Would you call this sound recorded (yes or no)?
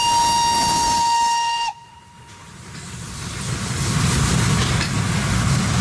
yes